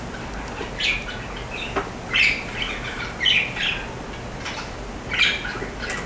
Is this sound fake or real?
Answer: real